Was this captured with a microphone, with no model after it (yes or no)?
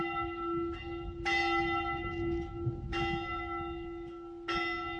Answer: yes